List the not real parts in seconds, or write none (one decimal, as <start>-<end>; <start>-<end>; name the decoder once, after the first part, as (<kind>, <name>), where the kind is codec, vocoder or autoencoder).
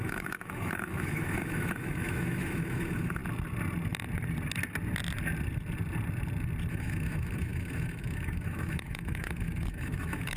0.0-3.2 (autoencoder, DAC-VAE); 6.7-10.4